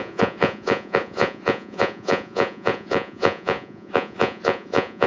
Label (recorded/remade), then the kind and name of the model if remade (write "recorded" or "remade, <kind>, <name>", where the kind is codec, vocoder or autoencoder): remade, vocoder, Vocos